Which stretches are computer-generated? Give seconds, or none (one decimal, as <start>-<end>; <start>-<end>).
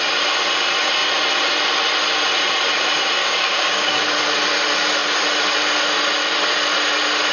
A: 3.2-4.0